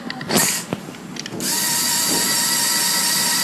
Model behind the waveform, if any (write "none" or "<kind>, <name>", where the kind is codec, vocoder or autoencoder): none